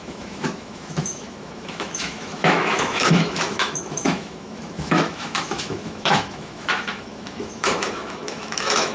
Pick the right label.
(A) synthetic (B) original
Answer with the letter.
A